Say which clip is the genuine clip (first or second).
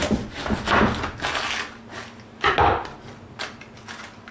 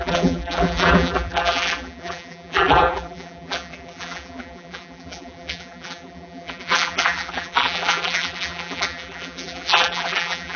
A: first